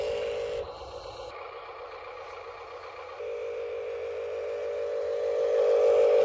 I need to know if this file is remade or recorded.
recorded